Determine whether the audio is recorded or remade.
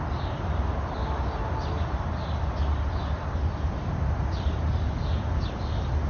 recorded